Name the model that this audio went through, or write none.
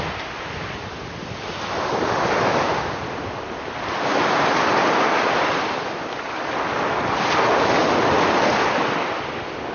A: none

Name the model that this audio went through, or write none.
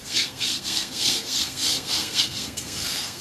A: codec, SNAC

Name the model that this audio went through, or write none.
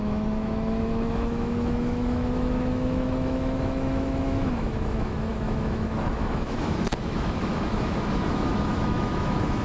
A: autoencoder, DAC-VAE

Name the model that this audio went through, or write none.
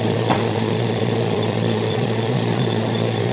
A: vocoder, Vocos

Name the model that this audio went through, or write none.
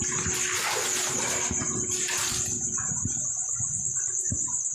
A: none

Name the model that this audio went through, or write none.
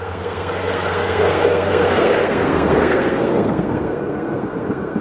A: codec, SNAC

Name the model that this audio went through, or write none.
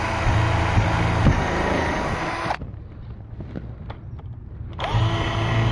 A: none